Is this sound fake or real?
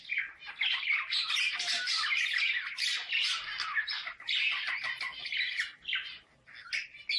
real